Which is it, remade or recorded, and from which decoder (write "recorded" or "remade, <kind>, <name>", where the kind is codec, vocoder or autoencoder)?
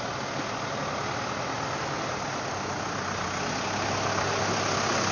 recorded